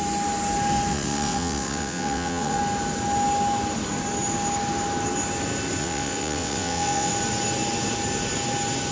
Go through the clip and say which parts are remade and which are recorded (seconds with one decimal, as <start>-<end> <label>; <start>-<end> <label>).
0.0-0.9 recorded; 0.9-2.6 remade; 2.6-5.8 recorded; 5.8-7.1 remade; 7.1-8.9 recorded